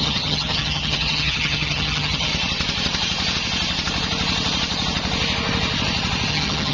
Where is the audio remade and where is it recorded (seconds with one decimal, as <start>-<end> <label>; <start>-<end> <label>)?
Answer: 0.0-2.3 remade; 2.3-6.3 recorded; 6.3-6.7 remade